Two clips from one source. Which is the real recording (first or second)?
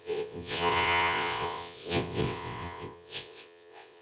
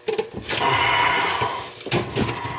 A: second